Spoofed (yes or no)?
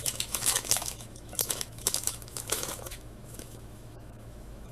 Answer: yes